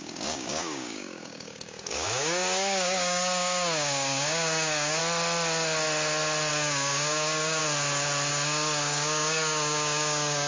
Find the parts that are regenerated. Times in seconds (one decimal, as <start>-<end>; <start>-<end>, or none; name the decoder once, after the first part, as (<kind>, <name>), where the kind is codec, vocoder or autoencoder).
0.0-5.0 (codec, DAC); 6.5-7.6; 8.3-10.5